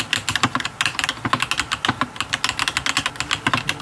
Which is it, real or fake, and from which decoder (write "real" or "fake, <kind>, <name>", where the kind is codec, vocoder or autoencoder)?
real